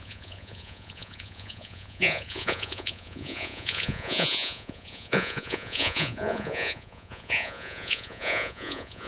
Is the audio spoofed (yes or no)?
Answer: yes